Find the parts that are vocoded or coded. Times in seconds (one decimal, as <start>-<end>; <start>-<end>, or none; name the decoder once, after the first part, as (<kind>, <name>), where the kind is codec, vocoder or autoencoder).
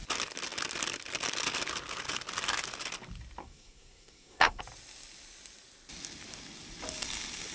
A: 3.4-4.6 (codec, SNAC)